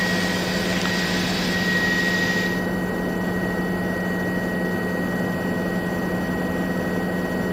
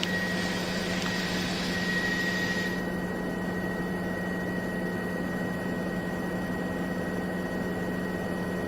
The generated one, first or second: second